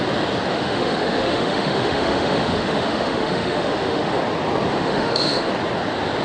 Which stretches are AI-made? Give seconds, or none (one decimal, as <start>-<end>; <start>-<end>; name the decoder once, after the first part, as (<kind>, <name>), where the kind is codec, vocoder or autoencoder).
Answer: 0.5-4.2 (autoencoder, DAC-VAE); 4.7-5.5